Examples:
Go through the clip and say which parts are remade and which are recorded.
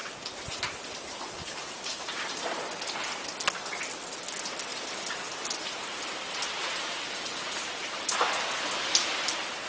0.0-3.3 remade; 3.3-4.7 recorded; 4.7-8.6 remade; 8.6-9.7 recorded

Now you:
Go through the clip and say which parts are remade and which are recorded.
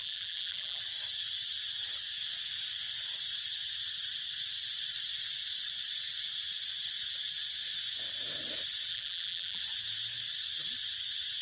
0.0-0.8 remade; 0.8-8.9 recorded; 8.9-9.6 remade; 9.6-11.4 recorded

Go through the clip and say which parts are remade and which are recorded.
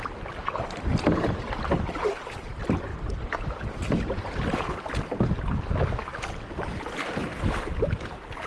0.0-0.9 recorded; 0.9-1.4 remade; 1.4-2.9 recorded; 2.9-5.4 remade; 5.4-7.2 recorded; 7.2-8.5 remade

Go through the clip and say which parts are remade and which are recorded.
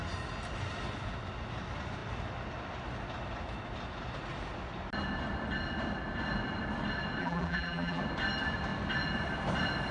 0.0-7.2 recorded; 7.2-8.0 remade; 8.0-9.9 recorded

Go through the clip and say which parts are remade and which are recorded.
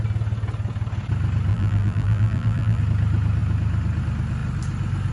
0.0-1.5 recorded; 1.5-2.8 remade; 2.8-5.1 recorded